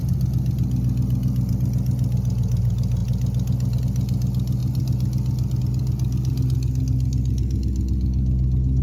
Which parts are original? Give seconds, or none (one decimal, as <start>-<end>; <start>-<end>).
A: 0.0-8.8